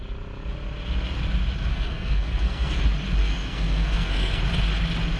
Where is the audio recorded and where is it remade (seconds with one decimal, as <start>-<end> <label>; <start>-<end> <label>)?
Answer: 0.0-1.7 recorded; 1.7-2.8 remade; 2.8-3.2 recorded; 3.2-4.4 remade; 4.4-5.2 recorded